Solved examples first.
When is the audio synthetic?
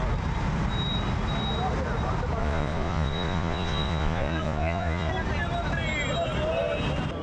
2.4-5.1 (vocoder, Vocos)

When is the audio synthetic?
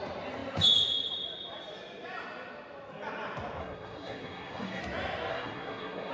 3.6-4.8 (codec, SNAC); 5.3-6.1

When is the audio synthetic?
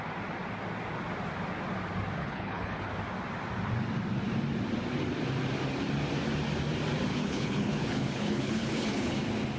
2.2-2.9 (codec, HILCodec); 7.1-9.2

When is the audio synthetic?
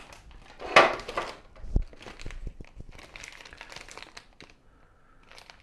none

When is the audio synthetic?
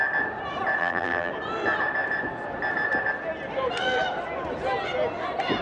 0.8-1.3 (vocoder, BigVGAN v2)